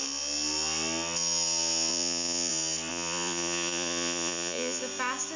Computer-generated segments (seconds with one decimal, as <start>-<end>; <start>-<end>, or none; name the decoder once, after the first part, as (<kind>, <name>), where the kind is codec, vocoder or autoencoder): 1.9-2.5 (vocoder, Vocos); 2.9-4.8